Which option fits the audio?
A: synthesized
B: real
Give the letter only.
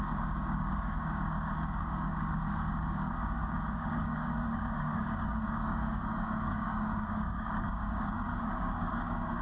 A